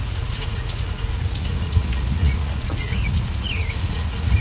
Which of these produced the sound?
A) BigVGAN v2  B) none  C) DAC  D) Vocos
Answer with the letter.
D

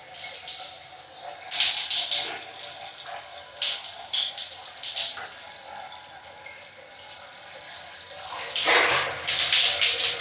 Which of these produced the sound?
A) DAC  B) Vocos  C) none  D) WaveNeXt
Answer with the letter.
C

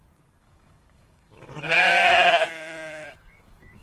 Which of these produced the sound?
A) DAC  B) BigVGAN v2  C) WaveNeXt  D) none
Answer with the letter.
A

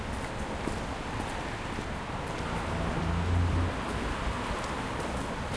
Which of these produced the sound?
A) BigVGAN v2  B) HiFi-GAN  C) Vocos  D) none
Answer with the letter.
D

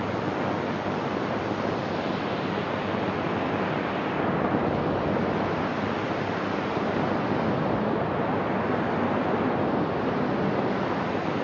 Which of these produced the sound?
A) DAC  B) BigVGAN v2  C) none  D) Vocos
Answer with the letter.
C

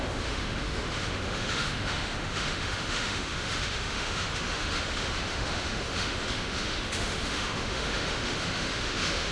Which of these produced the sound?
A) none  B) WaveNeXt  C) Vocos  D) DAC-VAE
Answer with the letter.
D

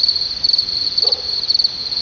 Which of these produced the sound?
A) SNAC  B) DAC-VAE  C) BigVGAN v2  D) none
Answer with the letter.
D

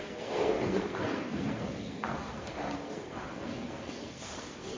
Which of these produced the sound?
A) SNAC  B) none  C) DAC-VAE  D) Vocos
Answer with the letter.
A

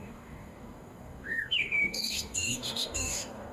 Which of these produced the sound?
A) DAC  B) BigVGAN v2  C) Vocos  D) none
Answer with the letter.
A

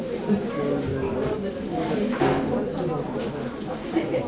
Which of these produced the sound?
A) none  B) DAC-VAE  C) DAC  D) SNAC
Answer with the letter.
A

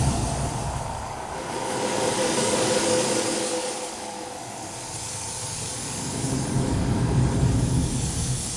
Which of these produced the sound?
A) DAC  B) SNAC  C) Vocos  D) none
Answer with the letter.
A